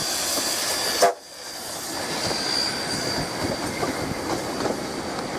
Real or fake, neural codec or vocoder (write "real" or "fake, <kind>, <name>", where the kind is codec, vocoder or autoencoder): real